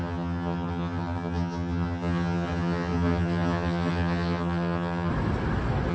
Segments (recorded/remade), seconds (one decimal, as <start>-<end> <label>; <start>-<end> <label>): 0.0-5.1 remade; 5.1-5.9 recorded